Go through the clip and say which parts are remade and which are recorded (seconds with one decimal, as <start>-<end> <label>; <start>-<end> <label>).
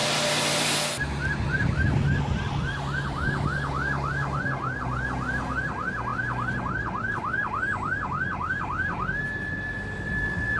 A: 0.0-10.6 recorded